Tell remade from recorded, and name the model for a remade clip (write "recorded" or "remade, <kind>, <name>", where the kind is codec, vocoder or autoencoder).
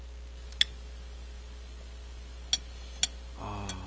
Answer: recorded